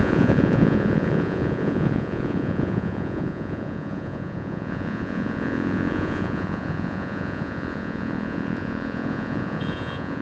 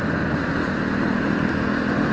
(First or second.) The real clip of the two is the second